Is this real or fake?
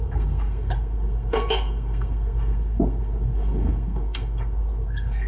fake